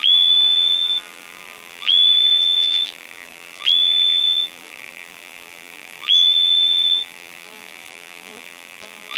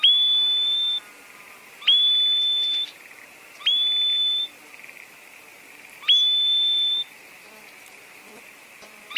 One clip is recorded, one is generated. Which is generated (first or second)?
first